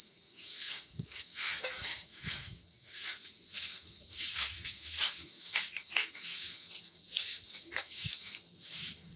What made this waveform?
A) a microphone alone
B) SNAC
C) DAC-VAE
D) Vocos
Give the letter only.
B